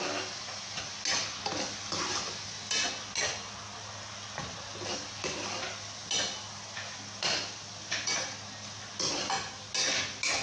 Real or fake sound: real